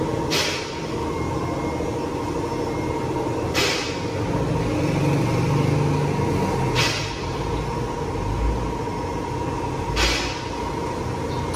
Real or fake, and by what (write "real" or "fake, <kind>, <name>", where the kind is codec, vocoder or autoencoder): real